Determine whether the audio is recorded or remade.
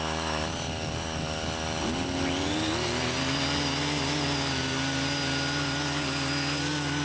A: recorded